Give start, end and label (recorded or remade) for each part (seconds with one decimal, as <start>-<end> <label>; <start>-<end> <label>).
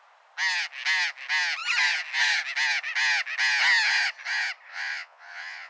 0.0-4.7 recorded; 4.7-5.7 remade